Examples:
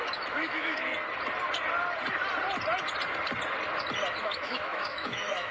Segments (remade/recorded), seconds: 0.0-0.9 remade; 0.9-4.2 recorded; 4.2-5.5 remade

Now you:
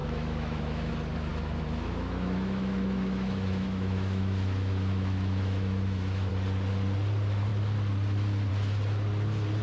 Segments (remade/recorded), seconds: 0.0-0.9 remade; 0.9-1.3 recorded; 1.3-6.3 remade; 6.3-9.6 recorded

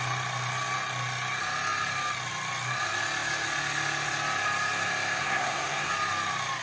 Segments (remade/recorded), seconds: 0.0-5.2 recorded; 5.2-5.9 remade; 5.9-6.6 recorded

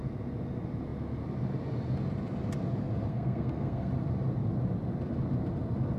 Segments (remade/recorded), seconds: 0.0-3.1 recorded; 3.1-3.9 remade; 3.9-6.0 recorded

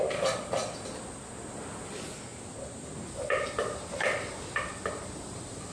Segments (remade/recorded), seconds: 0.0-5.7 recorded